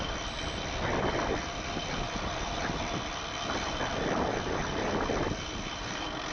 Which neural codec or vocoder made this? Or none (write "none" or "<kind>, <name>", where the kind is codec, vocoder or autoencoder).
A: none